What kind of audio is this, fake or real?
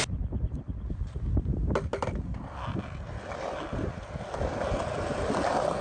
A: real